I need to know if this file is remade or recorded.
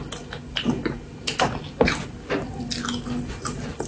recorded